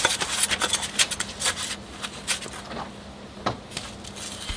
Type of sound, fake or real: real